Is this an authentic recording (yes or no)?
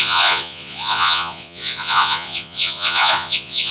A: no